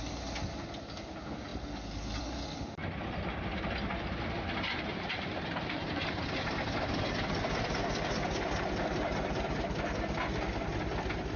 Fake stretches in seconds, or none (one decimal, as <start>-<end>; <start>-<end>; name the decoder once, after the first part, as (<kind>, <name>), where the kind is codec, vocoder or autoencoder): 3.9-6.2 (vocoder, BigVGAN v2)